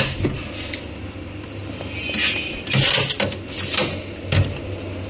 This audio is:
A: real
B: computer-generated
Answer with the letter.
A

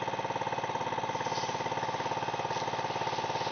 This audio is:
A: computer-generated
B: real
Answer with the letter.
B